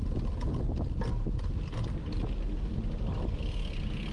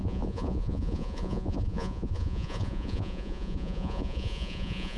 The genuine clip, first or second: first